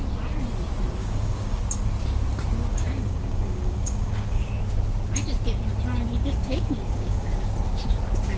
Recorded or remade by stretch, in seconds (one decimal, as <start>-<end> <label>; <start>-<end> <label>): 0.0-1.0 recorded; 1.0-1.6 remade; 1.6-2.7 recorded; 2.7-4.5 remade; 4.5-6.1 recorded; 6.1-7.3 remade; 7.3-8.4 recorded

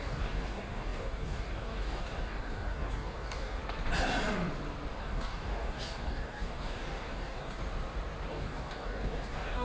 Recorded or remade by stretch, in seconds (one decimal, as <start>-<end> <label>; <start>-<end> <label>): 0.0-3.6 remade; 3.6-5.0 recorded; 5.0-7.6 remade; 7.6-8.3 recorded; 8.3-9.6 remade

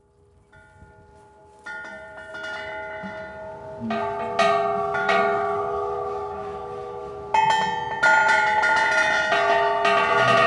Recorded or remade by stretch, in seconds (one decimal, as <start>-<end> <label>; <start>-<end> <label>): 0.0-5.0 recorded; 5.0-7.1 remade; 7.1-10.5 recorded

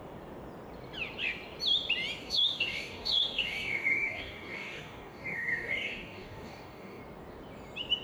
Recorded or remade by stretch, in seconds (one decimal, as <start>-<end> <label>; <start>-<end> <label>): 0.0-2.2 recorded; 2.2-7.0 remade; 7.0-8.0 recorded